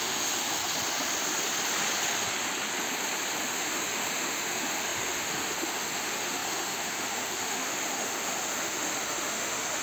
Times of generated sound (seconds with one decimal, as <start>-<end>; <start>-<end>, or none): 0.0-0.6; 3.4-9.8